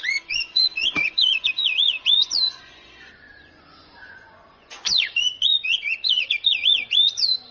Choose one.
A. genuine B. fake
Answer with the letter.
B